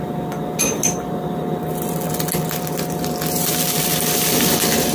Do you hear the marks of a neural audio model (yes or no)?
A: no